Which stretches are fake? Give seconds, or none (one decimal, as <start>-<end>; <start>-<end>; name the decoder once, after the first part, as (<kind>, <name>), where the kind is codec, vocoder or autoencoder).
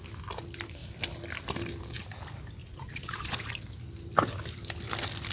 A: 2.6-3.5 (vocoder, Vocos)